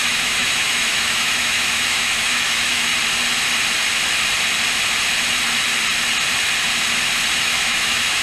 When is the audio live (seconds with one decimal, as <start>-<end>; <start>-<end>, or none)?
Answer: 2.9-7.4